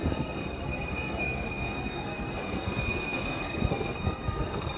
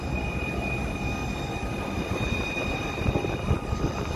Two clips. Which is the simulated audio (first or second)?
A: first